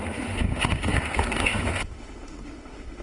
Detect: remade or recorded remade